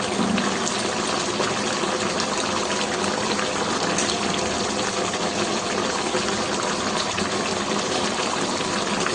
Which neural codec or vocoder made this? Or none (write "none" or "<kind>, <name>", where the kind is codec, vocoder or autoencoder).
none